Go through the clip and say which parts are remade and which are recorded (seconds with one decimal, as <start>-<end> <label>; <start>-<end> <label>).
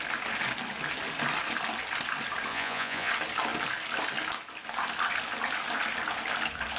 0.0-2.5 recorded; 2.5-3.1 remade; 3.1-6.8 recorded